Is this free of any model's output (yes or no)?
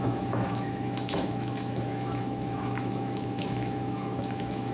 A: no